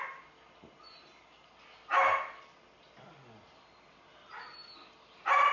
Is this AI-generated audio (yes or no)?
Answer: no